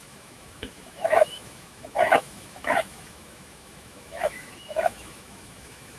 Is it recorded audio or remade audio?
remade